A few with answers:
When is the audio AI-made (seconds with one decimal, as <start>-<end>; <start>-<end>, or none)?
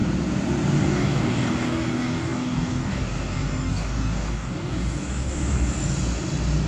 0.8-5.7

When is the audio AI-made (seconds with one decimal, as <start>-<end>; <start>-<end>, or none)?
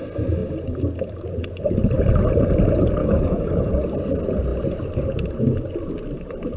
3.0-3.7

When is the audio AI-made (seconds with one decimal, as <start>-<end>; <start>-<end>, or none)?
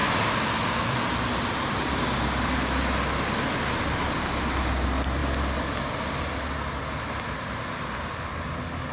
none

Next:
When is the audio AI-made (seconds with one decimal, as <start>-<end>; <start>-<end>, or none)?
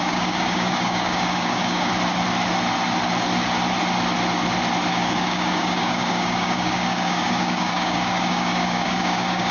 0.0-1.9; 4.9-9.5